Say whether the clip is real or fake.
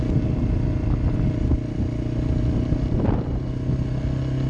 real